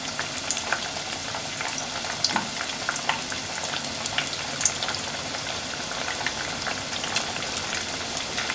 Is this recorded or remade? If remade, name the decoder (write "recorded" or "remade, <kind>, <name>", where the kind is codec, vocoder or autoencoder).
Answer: recorded